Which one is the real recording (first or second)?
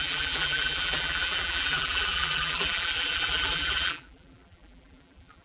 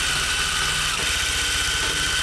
second